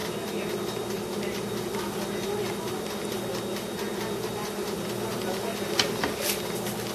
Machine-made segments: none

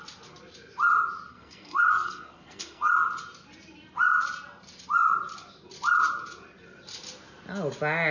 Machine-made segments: 1.3-2.9 (codec, SNAC)

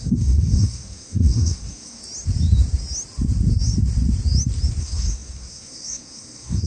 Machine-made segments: 0.0-2.0 (codec, SNAC); 4.8-6.7

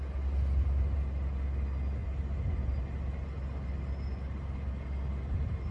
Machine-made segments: none